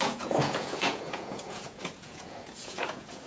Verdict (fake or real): fake